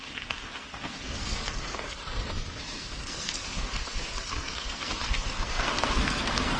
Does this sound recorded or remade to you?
remade